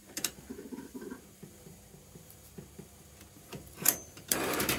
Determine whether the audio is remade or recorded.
remade